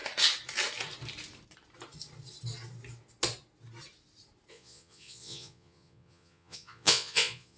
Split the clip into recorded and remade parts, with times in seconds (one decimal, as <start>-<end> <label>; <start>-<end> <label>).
0.0-4.5 recorded; 4.5-7.6 remade